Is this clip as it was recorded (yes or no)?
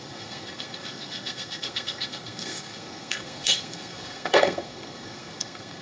no